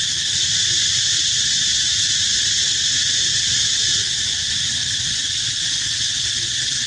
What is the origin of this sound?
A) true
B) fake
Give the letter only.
A